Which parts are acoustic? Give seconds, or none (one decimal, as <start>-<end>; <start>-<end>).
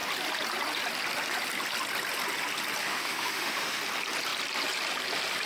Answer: 0.0-2.8; 3.8-5.5